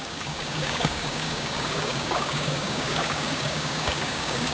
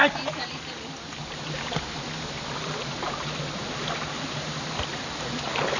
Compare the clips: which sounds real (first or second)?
second